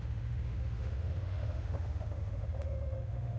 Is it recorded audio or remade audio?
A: remade